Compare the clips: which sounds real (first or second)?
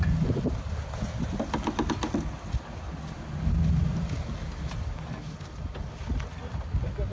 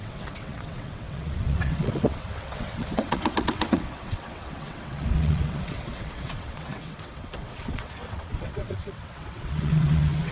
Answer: first